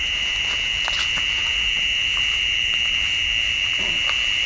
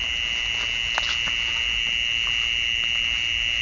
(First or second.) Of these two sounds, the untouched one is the second